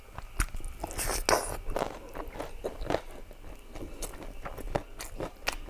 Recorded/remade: recorded